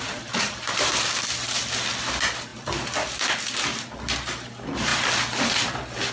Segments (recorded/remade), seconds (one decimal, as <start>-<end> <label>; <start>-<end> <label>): 0.0-6.1 recorded